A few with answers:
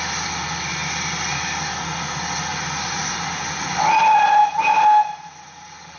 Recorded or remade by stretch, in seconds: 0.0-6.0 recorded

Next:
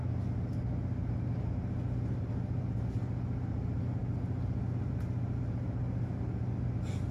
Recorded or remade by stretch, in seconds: 0.0-7.1 recorded

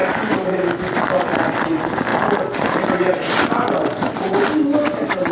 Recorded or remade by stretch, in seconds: 0.0-5.3 recorded

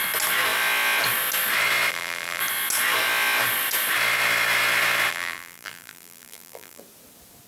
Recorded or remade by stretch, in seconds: 0.0-1.9 recorded; 1.9-2.4 remade; 2.4-5.1 recorded; 5.1-6.8 remade; 6.8-7.5 recorded

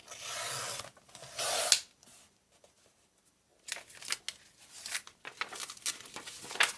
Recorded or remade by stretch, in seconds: 0.0-6.8 recorded

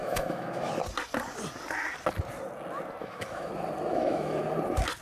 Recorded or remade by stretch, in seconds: 0.0-0.7 remade; 0.7-3.0 recorded; 3.0-3.5 remade; 3.5-3.9 recorded; 3.9-4.4 remade; 4.4-5.0 recorded

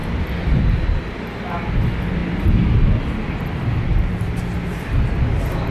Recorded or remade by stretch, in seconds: 0.0-5.7 recorded

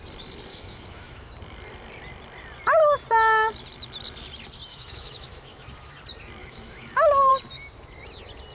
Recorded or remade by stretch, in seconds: 0.0-0.5 recorded; 0.5-1.3 remade; 1.3-4.7 recorded; 4.7-6.0 remade; 6.0-6.4 recorded; 6.4-7.3 remade; 7.3-8.5 recorded